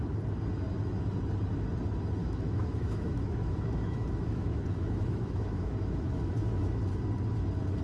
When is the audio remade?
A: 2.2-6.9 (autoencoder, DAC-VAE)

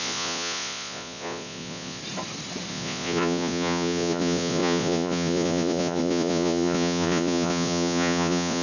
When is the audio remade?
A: 0.0-2.0 (vocoder, Vocos); 2.7-8.6

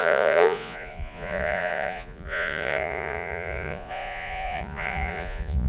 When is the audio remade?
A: 0.0-5.7 (vocoder, Vocos)

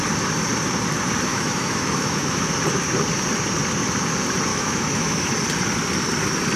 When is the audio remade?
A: 1.3-2.5 (autoencoder, DAC-VAE); 4.5-5.3

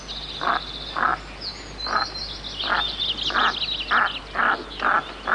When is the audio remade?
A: none

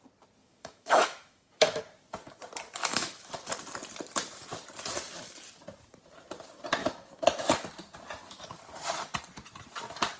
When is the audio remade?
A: 0.4-1.8 (autoencoder, DAC-VAE); 2.8-3.3; 6.8-7.7

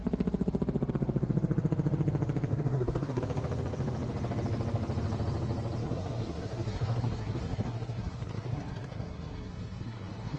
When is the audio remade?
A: 2.5-3.2 (codec, SNAC); 5.8-10.4